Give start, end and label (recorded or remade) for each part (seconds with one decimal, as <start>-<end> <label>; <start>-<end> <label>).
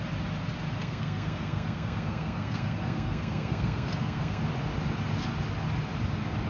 0.0-0.8 recorded; 0.8-4.4 remade; 4.4-6.5 recorded